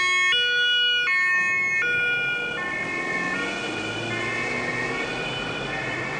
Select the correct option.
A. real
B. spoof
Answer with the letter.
A